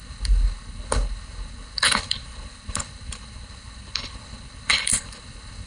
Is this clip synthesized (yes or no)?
yes